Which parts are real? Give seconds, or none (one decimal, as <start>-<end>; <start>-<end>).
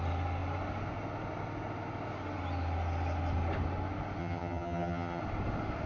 0.0-4.2; 5.2-5.9